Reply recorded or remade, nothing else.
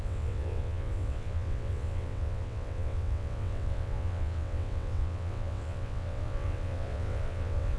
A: remade